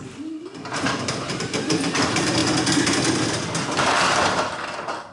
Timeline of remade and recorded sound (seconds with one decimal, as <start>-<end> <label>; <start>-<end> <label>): 0.0-2.4 remade; 2.4-3.8 recorded; 3.8-5.1 remade